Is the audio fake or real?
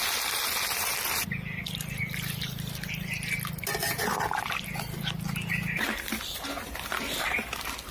real